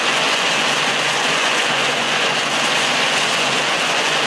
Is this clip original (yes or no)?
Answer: no